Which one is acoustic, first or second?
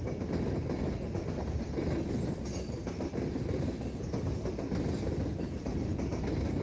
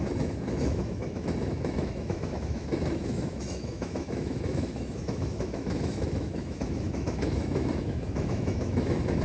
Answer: first